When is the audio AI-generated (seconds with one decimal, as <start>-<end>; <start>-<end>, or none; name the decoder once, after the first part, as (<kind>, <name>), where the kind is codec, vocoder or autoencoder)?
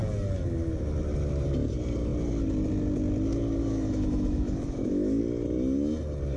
3.6-5.2 (autoencoder, DAC-VAE)